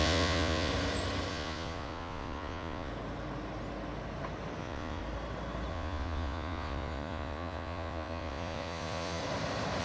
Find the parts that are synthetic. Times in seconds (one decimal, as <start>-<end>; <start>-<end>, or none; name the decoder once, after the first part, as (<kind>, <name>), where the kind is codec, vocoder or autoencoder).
0.0-0.7 (vocoder, Vocos); 1.3-2.9; 4.6-5.0; 5.7-9.2